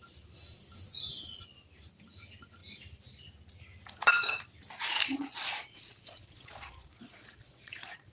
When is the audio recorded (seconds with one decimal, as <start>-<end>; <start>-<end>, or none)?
0.0-5.0